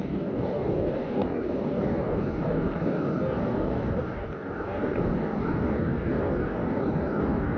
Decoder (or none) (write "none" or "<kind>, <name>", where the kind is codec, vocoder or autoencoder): codec, DAC